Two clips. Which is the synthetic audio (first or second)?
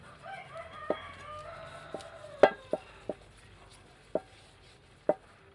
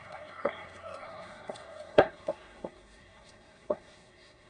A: second